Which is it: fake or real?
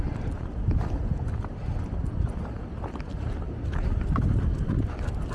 real